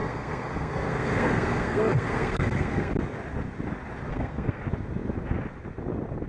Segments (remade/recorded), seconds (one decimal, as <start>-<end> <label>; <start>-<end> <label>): 0.0-2.9 remade; 2.9-4.1 recorded; 4.1-4.6 remade; 4.6-6.3 recorded